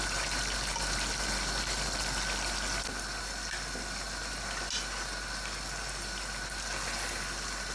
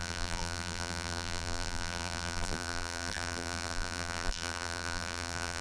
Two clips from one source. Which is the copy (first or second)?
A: second